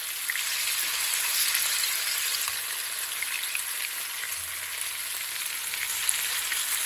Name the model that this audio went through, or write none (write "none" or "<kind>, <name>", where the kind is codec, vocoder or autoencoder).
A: none